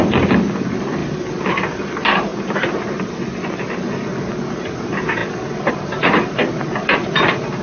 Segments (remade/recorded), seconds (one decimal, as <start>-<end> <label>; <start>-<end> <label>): 0.0-1.0 remade; 1.0-1.5 recorded; 1.5-2.3 remade; 2.3-4.6 recorded; 4.6-7.6 remade